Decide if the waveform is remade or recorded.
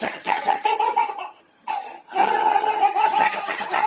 remade